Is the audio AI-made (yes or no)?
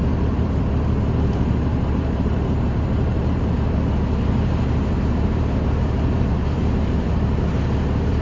yes